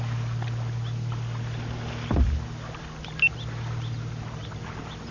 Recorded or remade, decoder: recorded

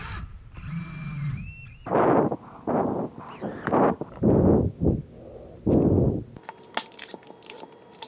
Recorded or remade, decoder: recorded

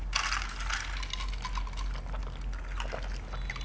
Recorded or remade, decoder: recorded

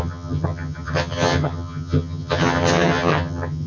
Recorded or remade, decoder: remade, vocoder, HiFi-GAN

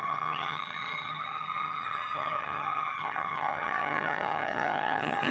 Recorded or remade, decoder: remade, vocoder, HiFi-GAN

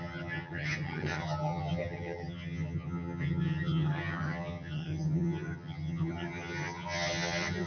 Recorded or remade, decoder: remade, vocoder, HiFi-GAN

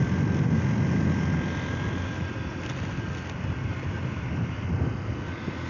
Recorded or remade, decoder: recorded